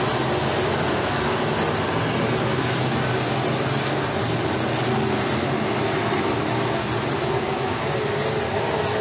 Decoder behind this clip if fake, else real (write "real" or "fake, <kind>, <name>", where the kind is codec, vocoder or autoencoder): real